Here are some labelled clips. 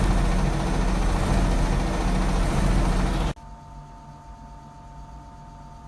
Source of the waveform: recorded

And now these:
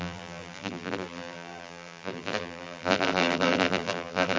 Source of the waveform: remade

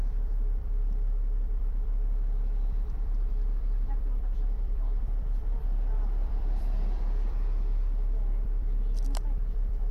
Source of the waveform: remade